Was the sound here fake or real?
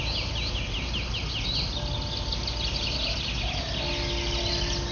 real